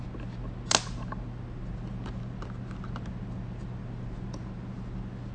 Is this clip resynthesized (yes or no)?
no